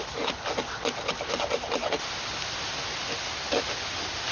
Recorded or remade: recorded